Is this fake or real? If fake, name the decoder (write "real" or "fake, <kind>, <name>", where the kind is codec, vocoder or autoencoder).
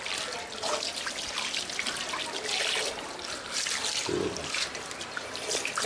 real